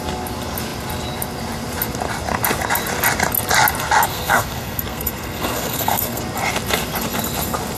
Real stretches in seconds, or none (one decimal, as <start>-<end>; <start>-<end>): 0.0-4.1; 6.2-7.8